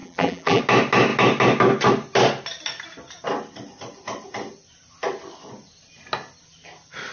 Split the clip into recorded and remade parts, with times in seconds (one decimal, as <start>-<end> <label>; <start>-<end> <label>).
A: 0.0-0.6 remade; 0.6-7.1 recorded